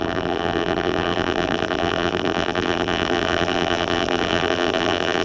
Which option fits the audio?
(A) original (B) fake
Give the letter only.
B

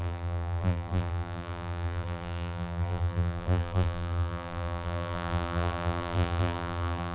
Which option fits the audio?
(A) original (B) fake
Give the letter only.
B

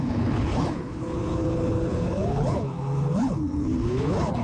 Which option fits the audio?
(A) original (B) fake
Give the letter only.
B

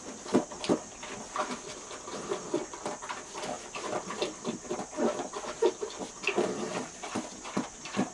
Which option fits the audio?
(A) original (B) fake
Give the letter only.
A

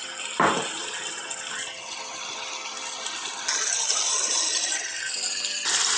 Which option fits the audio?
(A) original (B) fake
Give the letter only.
A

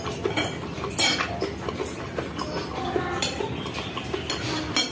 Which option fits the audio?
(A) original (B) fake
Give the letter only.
A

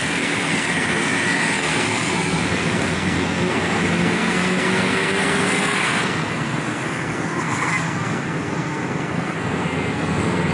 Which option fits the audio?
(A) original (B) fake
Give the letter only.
B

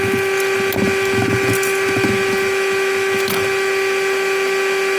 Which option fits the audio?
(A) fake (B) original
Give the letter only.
B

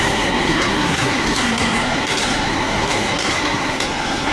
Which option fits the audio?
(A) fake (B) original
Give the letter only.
A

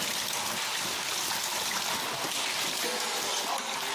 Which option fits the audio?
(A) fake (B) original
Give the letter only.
B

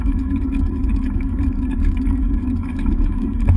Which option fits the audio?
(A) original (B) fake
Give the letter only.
B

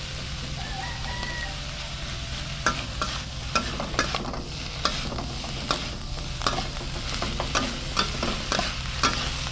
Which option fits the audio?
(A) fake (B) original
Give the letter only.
B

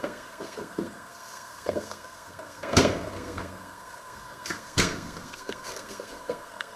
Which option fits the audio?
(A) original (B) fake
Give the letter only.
B